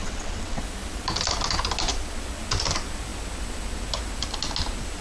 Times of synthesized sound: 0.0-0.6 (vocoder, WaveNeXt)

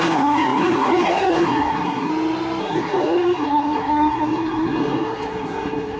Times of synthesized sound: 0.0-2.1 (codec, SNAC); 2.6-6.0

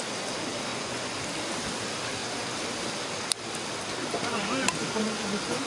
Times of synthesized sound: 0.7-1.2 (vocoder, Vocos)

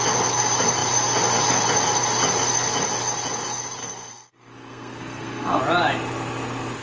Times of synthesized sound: 3.8-5.6 (codec, SNAC)

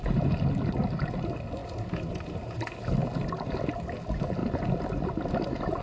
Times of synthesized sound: none

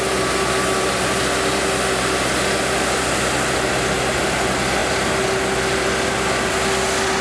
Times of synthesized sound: none

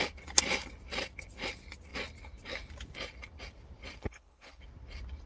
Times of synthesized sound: 4.0-4.6 (codec, HILCodec)

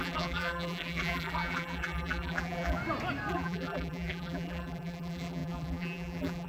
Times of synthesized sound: 0.0-2.8 (vocoder, BigVGAN v2); 3.3-6.5